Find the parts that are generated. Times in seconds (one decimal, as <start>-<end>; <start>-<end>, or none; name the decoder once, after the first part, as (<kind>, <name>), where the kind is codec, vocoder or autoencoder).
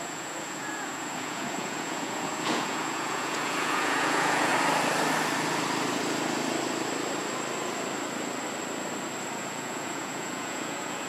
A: 0.0-4.5 (vocoder, Vocos); 9.4-11.1